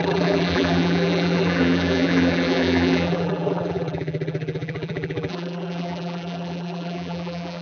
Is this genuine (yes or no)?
no